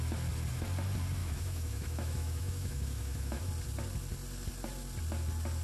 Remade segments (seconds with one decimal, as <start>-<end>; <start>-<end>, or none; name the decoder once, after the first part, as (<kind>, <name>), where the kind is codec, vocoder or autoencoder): 1.2-3.5 (autoencoder, DAC-VAE)